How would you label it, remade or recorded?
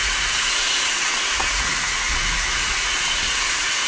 remade